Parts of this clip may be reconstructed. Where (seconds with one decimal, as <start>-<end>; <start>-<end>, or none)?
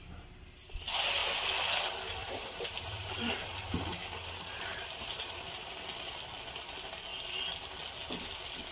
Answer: 2.2-5.7